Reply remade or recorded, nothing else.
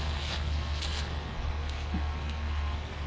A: remade